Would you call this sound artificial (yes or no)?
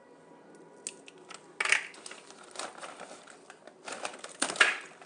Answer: no